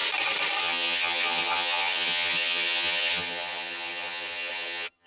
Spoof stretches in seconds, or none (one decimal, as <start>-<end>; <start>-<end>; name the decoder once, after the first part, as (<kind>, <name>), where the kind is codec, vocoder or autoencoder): 0.6-5.1 (vocoder, HiFi-GAN)